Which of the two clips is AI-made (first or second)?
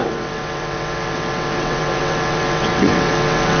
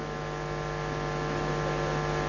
first